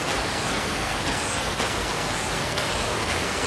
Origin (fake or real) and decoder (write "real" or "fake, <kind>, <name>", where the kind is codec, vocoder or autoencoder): fake, codec, SNAC